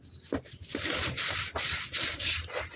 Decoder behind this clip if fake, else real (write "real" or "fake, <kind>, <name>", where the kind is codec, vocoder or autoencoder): real